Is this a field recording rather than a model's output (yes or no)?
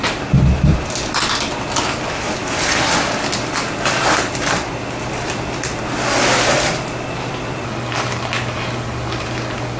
yes